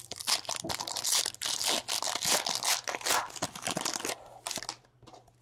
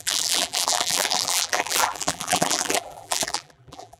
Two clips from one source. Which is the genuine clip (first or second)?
first